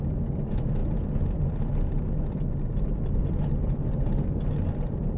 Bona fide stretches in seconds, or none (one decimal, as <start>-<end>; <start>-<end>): 0.0-5.2